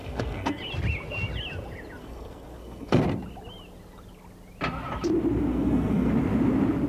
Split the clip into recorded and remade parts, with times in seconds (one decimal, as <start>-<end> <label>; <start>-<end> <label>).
0.0-0.6 remade; 0.6-2.0 recorded; 2.0-3.0 remade; 3.0-5.5 recorded; 5.5-6.1 remade; 6.1-6.9 recorded